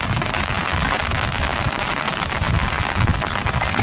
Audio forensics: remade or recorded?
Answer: recorded